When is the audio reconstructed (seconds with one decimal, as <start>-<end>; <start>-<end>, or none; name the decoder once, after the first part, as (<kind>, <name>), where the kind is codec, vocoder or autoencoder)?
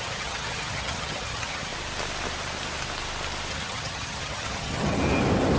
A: 0.0-1.7 (vocoder, HiFi-GAN); 3.5-5.0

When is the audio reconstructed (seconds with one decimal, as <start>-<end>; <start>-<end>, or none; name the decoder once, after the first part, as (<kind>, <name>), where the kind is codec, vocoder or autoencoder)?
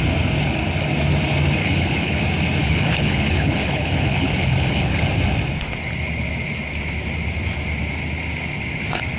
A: 1.6-2.2 (codec, HILCodec); 2.6-5.0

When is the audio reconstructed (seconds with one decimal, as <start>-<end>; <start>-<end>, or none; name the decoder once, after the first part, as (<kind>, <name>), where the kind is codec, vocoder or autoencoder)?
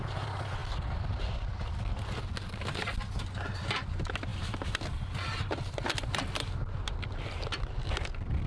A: none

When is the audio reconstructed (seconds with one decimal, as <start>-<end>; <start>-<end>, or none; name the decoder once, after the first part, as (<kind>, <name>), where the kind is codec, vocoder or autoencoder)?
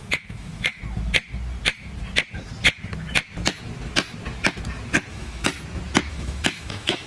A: 0.0-0.8 (autoencoder, DAC-VAE); 5.1-5.5; 6.1-7.1